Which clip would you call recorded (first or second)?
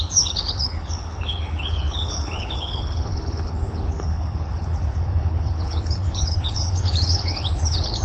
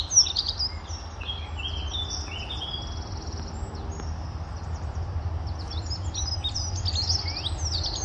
second